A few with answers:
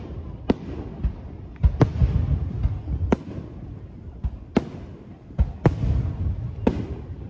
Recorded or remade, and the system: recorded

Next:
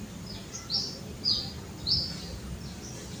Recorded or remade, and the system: recorded